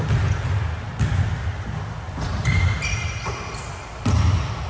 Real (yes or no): yes